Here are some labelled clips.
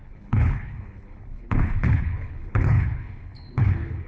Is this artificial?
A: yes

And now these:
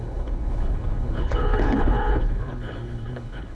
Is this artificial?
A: yes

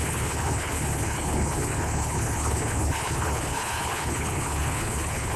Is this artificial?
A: yes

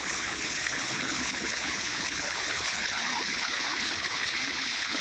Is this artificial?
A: yes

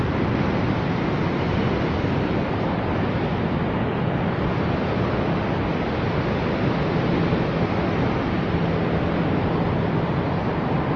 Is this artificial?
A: no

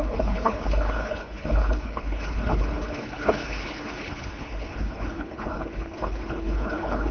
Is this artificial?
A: yes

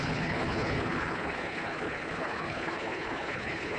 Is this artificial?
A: yes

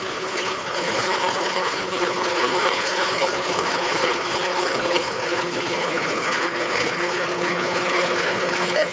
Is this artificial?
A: yes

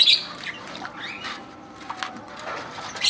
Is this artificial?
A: no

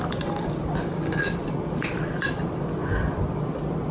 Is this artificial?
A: no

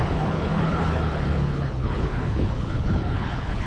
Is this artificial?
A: yes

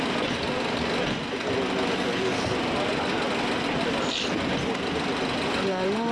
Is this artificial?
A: no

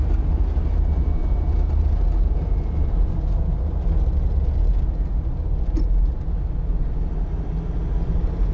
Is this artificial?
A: no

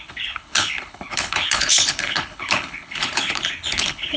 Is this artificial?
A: yes